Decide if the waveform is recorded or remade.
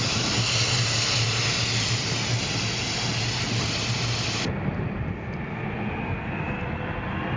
recorded